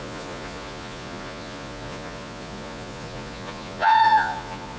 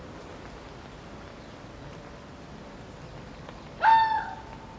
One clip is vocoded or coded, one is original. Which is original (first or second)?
second